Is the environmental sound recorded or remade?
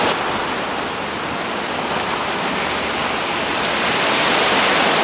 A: recorded